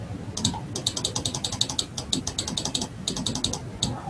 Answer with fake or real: real